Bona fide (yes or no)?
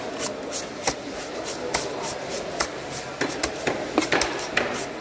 yes